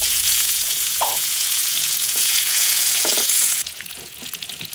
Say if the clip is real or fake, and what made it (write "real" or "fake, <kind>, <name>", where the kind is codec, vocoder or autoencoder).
fake, vocoder, Vocos